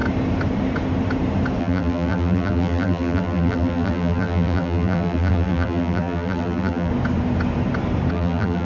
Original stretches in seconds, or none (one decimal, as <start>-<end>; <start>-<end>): 0.0-1.6; 6.9-8.1